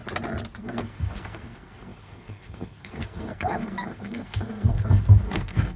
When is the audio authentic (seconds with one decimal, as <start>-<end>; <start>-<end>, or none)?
0.0-0.6